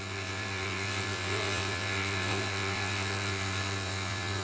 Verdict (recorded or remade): remade